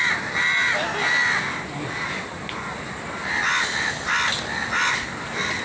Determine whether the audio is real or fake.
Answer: real